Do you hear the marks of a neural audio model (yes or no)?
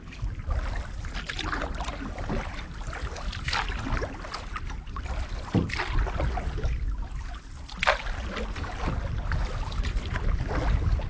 no